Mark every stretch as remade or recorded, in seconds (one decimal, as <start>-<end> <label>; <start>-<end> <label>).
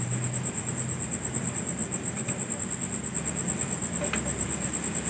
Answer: 0.0-5.1 recorded